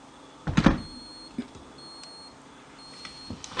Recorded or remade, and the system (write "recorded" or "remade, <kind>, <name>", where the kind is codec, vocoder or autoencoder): recorded